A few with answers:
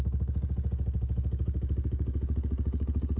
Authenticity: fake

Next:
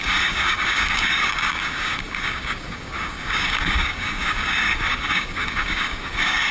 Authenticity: fake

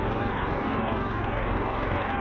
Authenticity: fake